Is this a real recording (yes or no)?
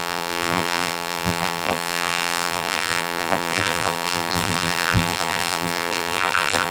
no